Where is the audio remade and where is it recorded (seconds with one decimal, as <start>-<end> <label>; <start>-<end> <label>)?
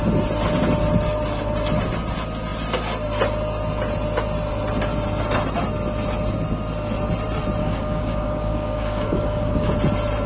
0.0-7.6 recorded; 7.6-9.7 remade; 9.7-10.3 recorded